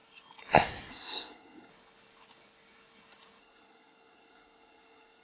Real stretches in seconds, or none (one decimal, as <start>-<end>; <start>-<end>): 0.0-0.9; 1.7-3.4